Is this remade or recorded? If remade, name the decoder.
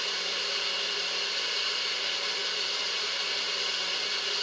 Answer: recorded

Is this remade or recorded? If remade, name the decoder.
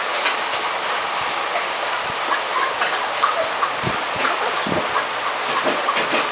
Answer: recorded